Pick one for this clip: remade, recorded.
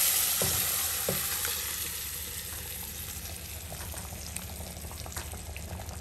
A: recorded